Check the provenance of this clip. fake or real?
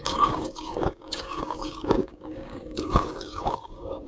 fake